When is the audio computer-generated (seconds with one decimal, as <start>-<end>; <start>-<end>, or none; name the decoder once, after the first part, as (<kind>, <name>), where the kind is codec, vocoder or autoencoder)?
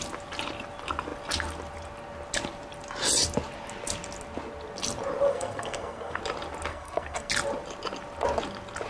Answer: 5.3-6.2 (codec, SNAC); 6.7-7.3